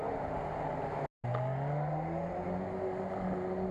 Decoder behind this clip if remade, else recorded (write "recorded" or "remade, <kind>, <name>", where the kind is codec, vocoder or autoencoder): recorded